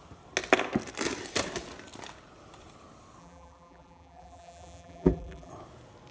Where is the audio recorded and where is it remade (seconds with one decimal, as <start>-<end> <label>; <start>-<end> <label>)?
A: 0.0-3.2 recorded; 3.2-5.5 remade; 5.5-6.1 recorded